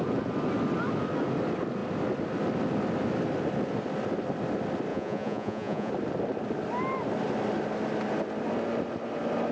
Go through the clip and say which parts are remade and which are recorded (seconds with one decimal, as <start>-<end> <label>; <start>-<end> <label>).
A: 0.0-4.9 recorded; 4.9-5.9 remade; 5.9-9.5 recorded